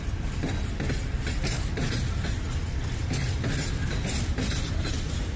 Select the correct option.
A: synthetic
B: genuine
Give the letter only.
B